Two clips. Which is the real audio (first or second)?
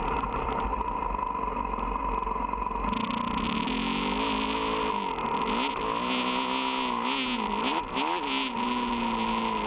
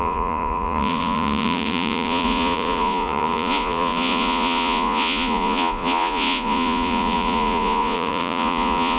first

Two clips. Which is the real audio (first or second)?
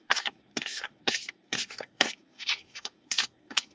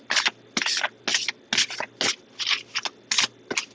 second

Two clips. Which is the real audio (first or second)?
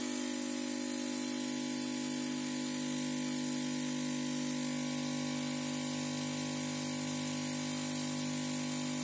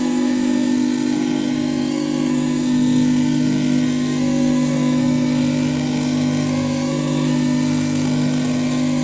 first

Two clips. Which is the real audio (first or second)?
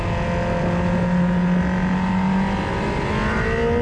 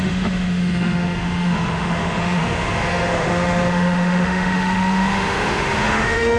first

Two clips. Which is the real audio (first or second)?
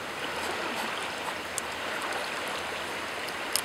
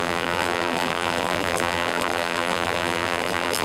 first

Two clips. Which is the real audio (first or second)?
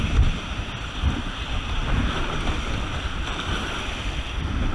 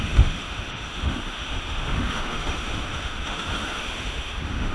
first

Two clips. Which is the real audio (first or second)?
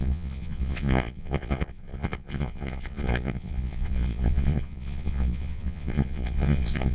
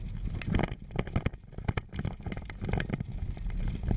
second